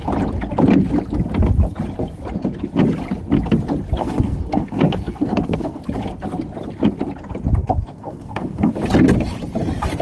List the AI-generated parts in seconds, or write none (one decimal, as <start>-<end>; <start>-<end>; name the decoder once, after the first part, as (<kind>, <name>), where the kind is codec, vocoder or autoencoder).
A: 4.0-5.8 (codec, SNAC); 7.6-8.7